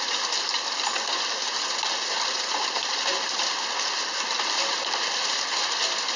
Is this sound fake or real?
real